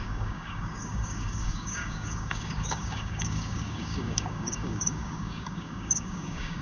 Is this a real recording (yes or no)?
no